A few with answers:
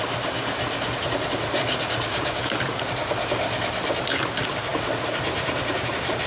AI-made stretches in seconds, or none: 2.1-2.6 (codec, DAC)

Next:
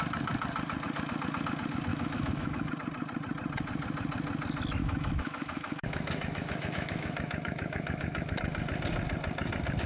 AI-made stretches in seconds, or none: 1.9-2.7 (autoencoder, DAC-VAE); 4.8-8.4

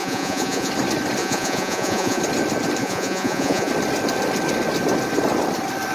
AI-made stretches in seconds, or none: 0.0-0.7 (vocoder, Vocos); 1.2-2.2; 2.8-3.7

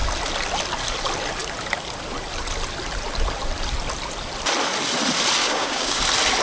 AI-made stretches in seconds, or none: 5.4-6.0 (codec, DAC)

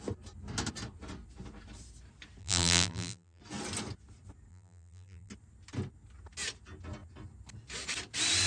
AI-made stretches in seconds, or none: 2.4-3.4 (vocoder, BigVGAN v2); 4.5-5.3

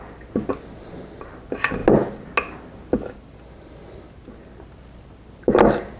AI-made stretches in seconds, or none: none